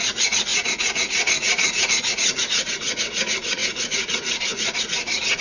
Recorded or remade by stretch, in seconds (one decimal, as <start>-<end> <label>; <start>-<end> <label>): 0.0-5.4 remade